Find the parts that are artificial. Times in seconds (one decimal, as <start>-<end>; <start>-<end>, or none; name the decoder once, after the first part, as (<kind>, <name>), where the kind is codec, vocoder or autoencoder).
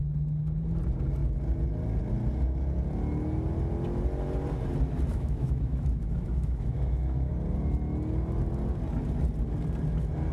5.1-7.3 (autoencoder, DAC-VAE)